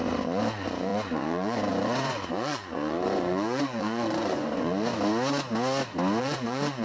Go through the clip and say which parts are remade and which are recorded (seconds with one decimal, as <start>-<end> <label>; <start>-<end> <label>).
0.0-4.9 remade; 4.9-6.2 recorded; 6.2-6.8 remade